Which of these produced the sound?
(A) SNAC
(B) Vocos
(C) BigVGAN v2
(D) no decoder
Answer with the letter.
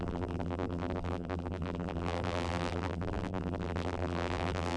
C